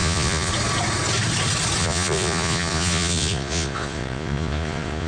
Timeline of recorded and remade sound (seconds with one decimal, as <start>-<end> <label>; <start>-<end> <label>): 0.0-0.5 remade; 0.5-1.8 recorded; 1.8-5.1 remade